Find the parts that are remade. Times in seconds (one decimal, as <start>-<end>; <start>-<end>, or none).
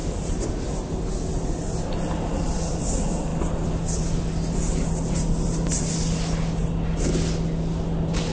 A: none